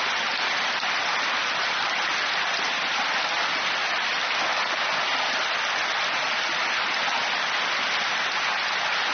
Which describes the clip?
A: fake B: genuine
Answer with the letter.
B